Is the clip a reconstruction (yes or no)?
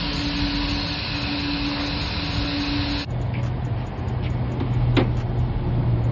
no